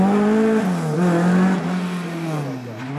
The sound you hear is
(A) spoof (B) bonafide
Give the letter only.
B